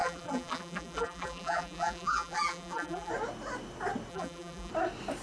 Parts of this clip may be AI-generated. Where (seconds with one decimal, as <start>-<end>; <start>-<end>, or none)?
0.0-3.1; 4.1-4.7